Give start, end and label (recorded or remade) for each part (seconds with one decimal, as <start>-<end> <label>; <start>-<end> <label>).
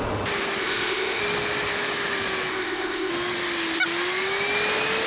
0.0-0.6 recorded; 0.6-1.2 remade; 1.2-2.5 recorded; 2.5-3.1 remade; 3.1-5.1 recorded